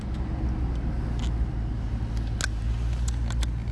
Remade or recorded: recorded